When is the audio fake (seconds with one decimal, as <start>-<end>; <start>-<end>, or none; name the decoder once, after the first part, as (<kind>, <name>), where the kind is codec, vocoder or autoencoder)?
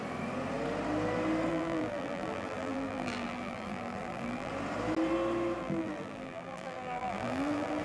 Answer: 1.5-4.5 (vocoder, BigVGAN v2); 5.6-7.8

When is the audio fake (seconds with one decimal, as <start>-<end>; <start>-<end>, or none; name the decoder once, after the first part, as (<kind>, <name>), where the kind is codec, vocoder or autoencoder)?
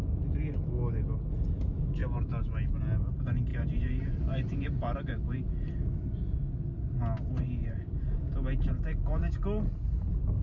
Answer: 3.5-5.7 (vocoder, BigVGAN v2); 7.6-8.2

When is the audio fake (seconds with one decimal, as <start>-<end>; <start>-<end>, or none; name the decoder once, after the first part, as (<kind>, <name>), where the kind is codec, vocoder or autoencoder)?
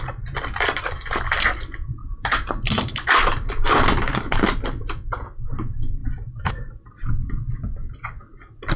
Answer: 2.0-3.5 (vocoder, BigVGAN v2)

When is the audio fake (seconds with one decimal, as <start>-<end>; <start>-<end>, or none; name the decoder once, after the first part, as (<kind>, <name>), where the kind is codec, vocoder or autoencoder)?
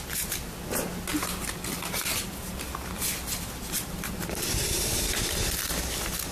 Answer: none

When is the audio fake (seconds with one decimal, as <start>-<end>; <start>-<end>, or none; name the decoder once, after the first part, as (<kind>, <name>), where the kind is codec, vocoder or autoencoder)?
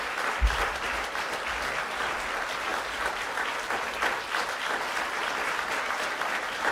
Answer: none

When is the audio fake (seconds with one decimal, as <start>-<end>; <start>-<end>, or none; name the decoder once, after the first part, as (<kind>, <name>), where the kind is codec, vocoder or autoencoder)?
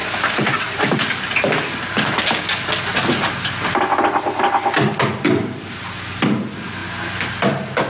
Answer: none